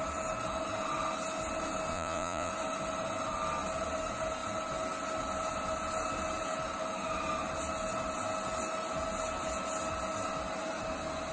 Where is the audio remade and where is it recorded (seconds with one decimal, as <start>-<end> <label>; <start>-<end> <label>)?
0.0-1.9 recorded; 1.9-2.5 remade; 2.5-11.3 recorded